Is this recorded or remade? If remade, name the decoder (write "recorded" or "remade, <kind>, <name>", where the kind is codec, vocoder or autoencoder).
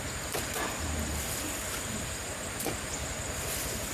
recorded